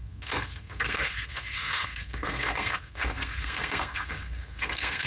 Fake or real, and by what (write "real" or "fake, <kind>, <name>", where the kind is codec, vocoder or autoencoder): fake, codec, SNAC